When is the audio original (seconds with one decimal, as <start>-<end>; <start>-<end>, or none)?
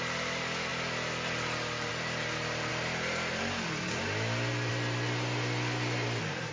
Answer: 0.0-6.5